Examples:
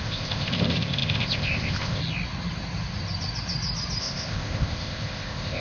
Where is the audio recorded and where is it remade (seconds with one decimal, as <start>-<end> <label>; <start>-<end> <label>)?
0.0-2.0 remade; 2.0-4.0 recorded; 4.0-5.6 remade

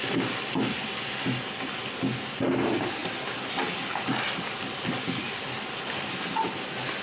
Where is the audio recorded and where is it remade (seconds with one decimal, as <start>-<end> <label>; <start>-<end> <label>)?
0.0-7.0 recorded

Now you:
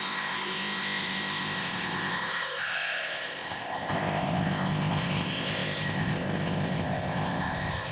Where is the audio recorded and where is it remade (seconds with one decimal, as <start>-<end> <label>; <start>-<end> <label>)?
0.0-7.9 remade

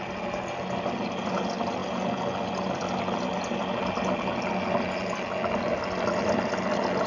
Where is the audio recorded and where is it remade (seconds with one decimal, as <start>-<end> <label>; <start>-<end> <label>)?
0.0-7.1 recorded

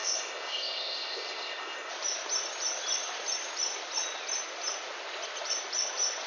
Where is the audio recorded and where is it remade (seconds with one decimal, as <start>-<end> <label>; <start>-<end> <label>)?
0.0-1.9 remade; 1.9-6.3 recorded

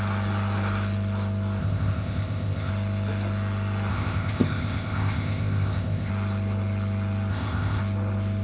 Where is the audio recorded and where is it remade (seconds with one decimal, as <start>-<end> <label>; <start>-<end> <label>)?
0.0-1.6 recorded; 1.6-2.7 remade; 2.7-3.9 recorded; 3.9-6.1 remade; 6.1-7.3 recorded; 7.3-7.8 remade; 7.8-8.4 recorded

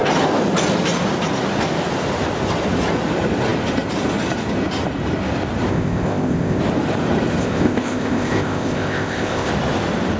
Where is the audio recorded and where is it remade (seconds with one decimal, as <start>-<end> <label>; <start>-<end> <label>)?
0.0-5.7 recorded; 5.7-6.6 remade; 6.6-7.4 recorded; 7.4-9.5 remade; 9.5-10.2 recorded